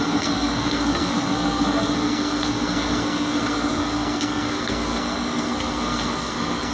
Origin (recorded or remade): remade